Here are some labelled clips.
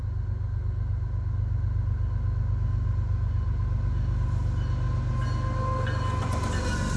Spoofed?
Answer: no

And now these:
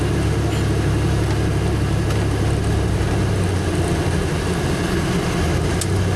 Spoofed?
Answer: no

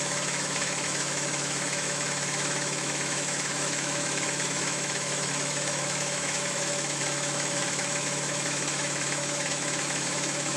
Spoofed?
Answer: yes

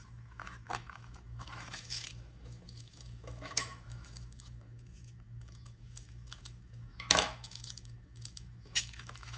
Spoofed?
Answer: yes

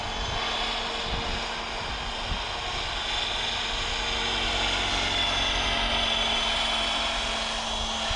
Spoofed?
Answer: no